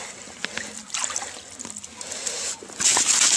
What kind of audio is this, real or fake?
real